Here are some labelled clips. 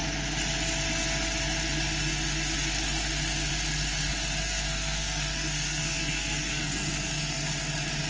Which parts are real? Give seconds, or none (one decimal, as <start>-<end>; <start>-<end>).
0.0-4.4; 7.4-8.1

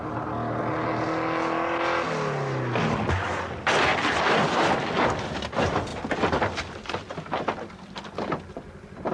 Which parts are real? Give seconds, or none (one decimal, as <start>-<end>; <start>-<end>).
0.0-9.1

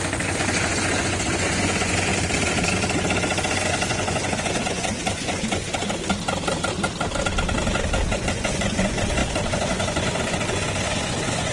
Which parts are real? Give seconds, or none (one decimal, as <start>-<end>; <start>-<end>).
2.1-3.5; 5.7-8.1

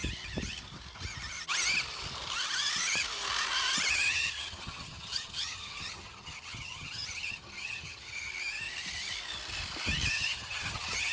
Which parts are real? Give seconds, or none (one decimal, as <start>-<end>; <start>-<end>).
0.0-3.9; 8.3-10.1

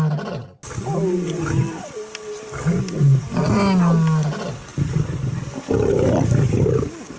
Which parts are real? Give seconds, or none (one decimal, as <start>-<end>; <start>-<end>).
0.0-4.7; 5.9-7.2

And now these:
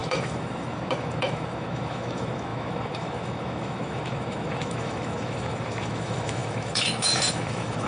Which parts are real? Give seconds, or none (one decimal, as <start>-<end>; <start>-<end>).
none

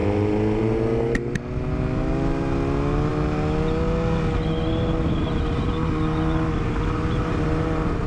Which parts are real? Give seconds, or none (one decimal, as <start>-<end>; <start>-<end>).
0.0-8.1

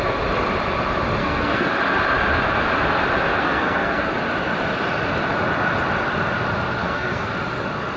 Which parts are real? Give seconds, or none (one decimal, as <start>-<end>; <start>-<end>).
0.0-1.2; 1.7-3.3; 4.1-6.8; 7.3-8.0